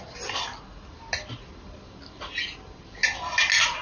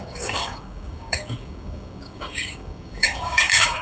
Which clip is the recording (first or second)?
first